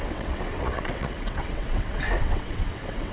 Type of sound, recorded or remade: remade